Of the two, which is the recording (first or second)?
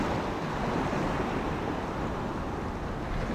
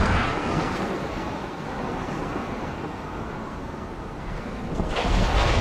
first